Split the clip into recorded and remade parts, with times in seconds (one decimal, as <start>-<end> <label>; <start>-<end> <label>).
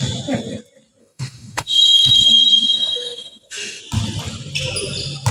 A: 0.0-1.0 recorded; 1.0-3.8 remade; 3.8-5.3 recorded